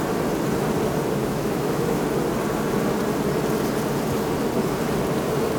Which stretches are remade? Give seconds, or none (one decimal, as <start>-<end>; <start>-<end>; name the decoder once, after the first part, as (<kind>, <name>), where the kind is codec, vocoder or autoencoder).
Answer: 1.2-2.0 (autoencoder, DAC-VAE)